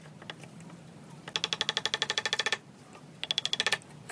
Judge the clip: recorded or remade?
recorded